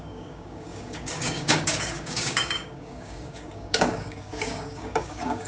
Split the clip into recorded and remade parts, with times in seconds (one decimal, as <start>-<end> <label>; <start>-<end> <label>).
0.0-5.5 remade